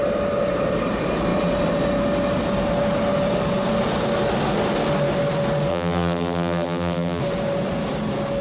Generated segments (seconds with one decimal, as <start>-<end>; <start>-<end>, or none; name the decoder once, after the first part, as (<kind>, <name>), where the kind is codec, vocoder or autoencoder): 5.7-7.2 (vocoder, BigVGAN v2)